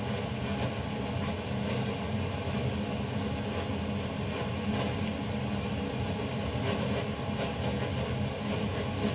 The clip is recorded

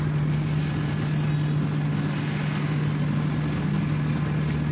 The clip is recorded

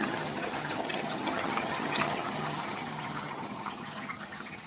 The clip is remade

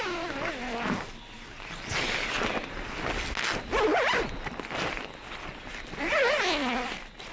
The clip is recorded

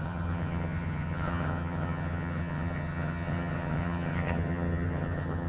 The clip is remade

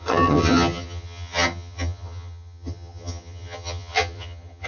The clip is remade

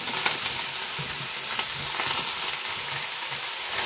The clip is recorded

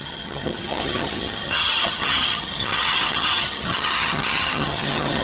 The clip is remade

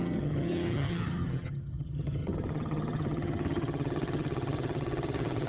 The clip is remade